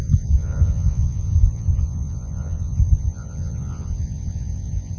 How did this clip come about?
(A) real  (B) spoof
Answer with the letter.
B